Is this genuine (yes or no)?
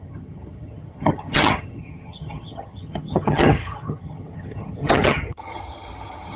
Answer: no